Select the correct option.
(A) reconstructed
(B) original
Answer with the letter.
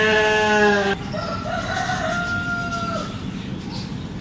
B